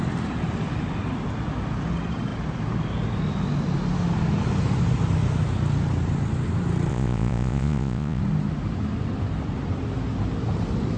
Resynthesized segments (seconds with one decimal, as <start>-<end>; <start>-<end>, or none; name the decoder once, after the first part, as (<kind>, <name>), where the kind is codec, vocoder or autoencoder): 6.9-8.2 (vocoder, Vocos)